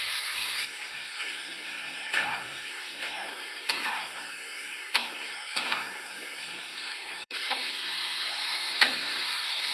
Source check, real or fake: fake